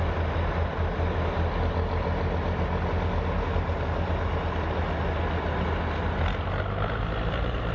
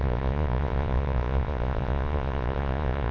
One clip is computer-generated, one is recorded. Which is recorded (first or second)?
first